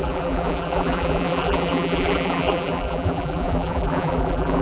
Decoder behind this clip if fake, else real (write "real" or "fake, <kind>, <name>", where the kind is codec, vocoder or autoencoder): fake, vocoder, BigVGAN v2